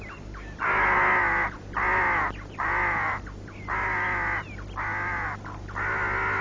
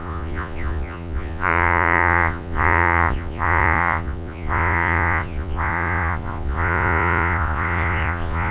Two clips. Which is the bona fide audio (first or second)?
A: first